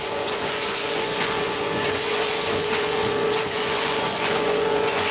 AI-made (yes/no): yes